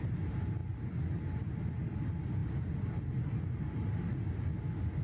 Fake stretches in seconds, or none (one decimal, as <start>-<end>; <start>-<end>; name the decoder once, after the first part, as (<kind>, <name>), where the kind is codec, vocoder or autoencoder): none